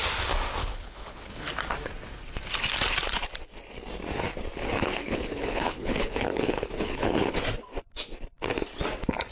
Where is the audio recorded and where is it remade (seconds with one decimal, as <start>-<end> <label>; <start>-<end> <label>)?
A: 0.0-0.6 recorded; 0.6-1.5 remade; 1.5-4.8 recorded; 4.8-7.4 remade; 7.4-9.3 recorded